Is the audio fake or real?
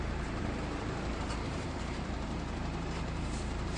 fake